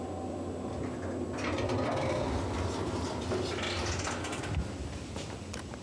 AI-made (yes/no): no